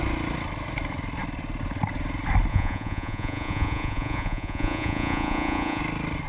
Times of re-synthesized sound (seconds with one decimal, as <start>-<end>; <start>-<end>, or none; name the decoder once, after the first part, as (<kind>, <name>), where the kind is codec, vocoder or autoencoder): 2.5-5.8 (vocoder, Vocos)